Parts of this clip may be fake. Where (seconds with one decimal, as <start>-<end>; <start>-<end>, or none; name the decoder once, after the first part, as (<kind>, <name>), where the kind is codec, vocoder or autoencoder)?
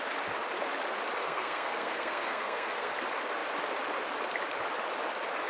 1.2-2.9 (codec, SNAC)